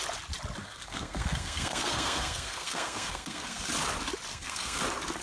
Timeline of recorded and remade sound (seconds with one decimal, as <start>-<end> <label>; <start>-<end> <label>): 0.0-0.6 recorded; 0.6-3.7 remade; 3.7-4.3 recorded; 4.3-4.8 remade; 4.8-5.2 recorded